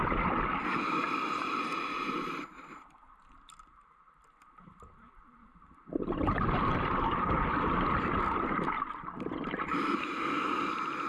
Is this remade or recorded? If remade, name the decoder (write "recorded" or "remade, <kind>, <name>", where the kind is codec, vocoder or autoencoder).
remade, vocoder, BigVGAN v2